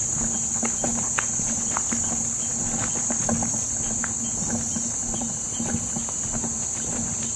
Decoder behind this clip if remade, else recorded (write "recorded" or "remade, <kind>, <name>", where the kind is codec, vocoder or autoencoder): recorded